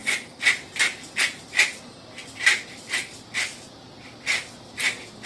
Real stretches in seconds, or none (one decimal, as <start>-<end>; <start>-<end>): 0.0-5.3